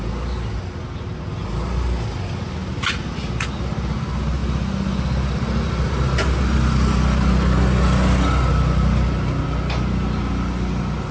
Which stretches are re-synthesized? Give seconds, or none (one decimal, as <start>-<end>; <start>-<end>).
none